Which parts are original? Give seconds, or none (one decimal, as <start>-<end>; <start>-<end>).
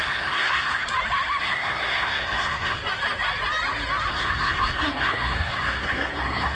0.8-1.4; 2.8-4.1